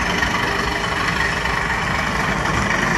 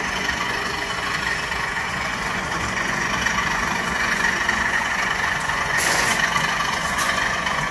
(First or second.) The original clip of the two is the first